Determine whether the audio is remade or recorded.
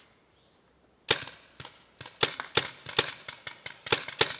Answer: recorded